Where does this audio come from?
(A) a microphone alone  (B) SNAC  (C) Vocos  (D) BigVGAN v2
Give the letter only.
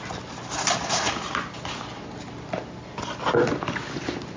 A